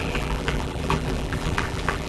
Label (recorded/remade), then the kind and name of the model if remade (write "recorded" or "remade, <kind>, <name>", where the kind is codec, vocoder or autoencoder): remade, vocoder, BigVGAN v2